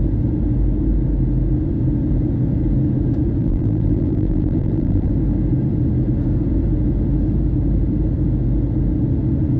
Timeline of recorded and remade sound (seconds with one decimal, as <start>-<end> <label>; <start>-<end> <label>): 0.0-3.4 recorded; 3.4-5.1 remade; 5.1-9.6 recorded